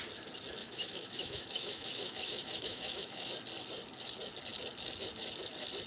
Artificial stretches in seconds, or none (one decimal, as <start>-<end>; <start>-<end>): 0.6-3.3